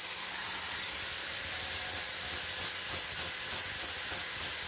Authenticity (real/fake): real